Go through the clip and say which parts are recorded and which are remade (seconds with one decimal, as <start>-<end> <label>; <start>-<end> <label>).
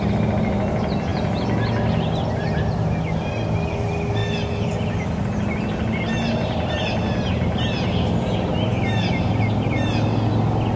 0.0-10.8 recorded